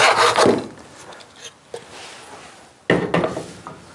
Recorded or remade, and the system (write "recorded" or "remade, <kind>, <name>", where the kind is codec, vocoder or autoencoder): recorded